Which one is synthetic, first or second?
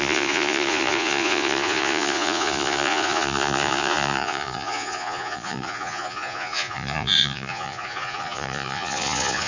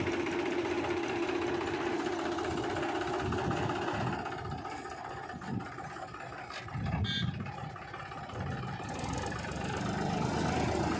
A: first